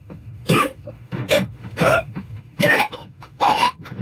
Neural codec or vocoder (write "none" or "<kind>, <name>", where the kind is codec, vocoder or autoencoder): autoencoder, DAC-VAE